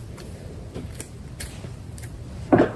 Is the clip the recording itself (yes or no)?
yes